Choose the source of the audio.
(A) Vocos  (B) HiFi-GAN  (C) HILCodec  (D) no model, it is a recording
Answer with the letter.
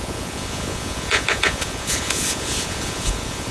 A